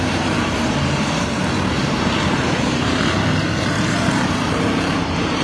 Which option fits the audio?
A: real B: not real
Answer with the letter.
B